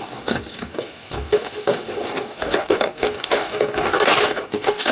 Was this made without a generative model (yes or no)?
no